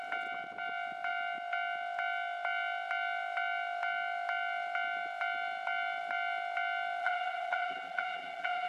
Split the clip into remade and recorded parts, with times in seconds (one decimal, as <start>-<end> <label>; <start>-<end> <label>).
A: 0.0-7.0 recorded; 7.0-8.7 remade